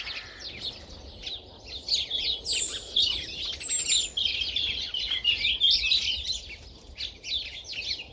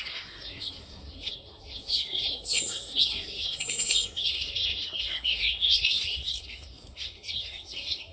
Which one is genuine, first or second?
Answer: first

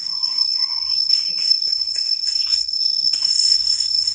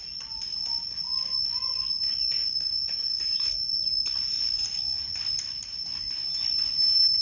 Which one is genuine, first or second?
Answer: second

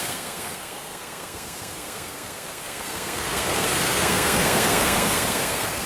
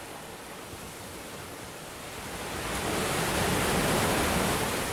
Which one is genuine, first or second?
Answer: second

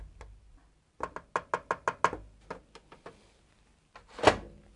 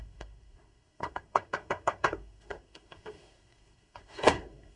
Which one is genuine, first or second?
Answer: first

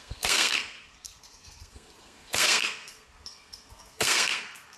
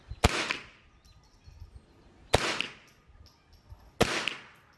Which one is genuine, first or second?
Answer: second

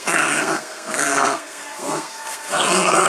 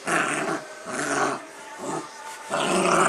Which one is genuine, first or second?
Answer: second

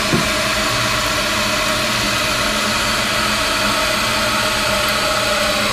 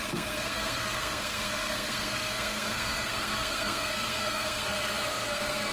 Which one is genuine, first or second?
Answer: first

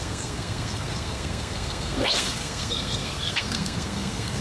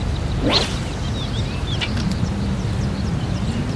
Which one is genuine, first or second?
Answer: second